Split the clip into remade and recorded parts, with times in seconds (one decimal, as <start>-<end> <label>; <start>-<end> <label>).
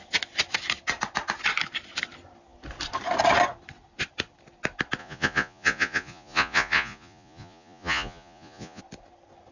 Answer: 0.0-5.0 recorded; 5.0-8.8 remade; 8.8-9.5 recorded